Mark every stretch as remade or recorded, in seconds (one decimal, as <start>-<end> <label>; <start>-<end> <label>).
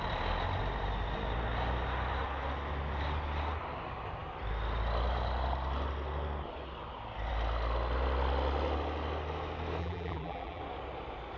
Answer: 0.0-9.8 recorded; 9.8-10.6 remade; 10.6-11.4 recorded